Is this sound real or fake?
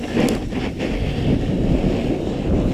real